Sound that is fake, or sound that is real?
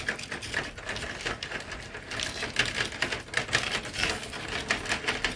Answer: real